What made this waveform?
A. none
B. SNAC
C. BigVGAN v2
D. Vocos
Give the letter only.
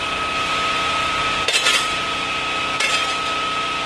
A